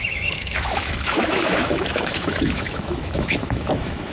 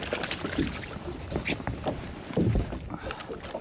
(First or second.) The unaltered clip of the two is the second